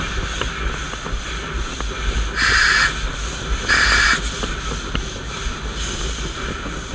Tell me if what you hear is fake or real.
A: real